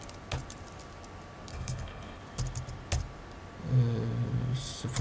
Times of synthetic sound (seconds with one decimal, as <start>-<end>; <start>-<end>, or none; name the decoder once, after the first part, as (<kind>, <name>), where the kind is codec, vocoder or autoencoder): 1.5-2.2 (codec, HILCodec)